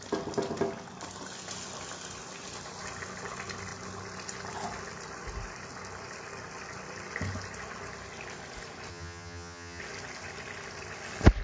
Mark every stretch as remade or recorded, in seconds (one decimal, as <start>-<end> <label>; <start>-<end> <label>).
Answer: 0.0-8.9 recorded; 8.9-9.8 remade; 9.8-11.4 recorded